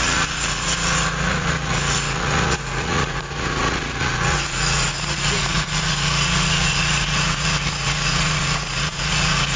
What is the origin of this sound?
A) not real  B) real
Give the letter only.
A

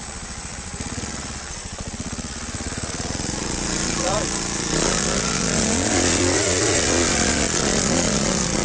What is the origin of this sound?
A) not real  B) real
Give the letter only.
A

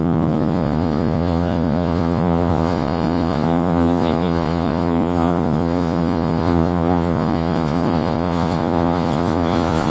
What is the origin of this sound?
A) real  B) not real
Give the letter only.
B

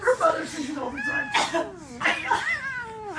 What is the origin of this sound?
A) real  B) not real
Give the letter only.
A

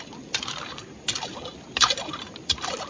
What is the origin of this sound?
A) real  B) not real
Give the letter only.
A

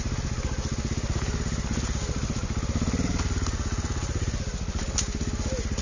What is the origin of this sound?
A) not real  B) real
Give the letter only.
B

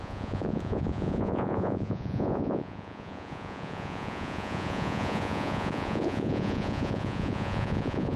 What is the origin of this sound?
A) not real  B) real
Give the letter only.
A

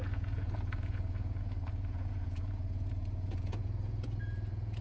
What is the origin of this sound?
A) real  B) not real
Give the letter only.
B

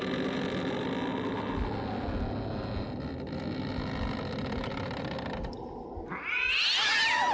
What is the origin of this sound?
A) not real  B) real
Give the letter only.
B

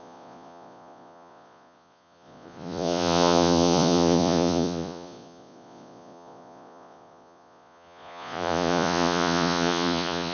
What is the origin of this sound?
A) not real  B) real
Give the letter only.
A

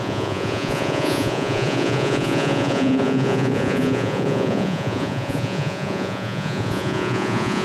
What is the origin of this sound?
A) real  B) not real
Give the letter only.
B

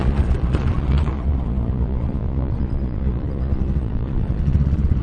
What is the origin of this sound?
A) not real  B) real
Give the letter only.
A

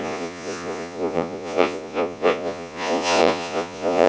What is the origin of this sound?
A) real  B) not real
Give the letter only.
B